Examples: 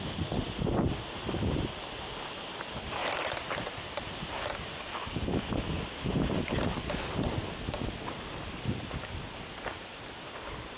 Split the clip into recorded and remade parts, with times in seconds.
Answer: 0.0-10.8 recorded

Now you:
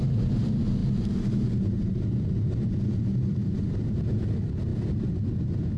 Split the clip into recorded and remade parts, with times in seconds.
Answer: 0.0-0.8 recorded; 0.8-2.2 remade; 2.2-3.1 recorded; 3.1-4.3 remade; 4.3-5.8 recorded

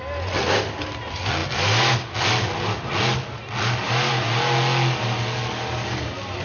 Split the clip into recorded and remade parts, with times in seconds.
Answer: 0.0-6.4 recorded

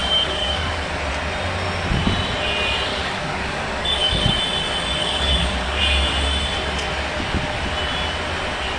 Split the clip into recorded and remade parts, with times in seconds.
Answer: 0.0-1.0 remade; 1.0-2.9 recorded; 2.9-4.4 remade; 4.4-5.0 recorded; 5.0-5.8 remade; 5.8-8.8 recorded